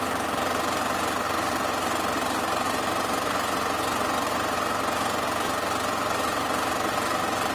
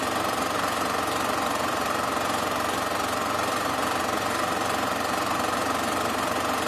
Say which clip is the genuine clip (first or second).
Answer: first